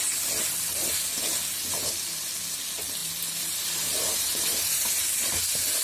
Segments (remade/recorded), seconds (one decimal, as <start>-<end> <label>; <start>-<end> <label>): 0.0-3.0 recorded; 3.0-5.0 remade; 5.0-5.8 recorded